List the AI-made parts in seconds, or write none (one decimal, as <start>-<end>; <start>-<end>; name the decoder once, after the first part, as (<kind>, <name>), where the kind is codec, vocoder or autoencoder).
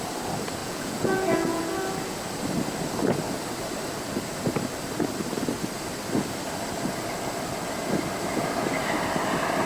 0.6-1.6 (vocoder, Vocos)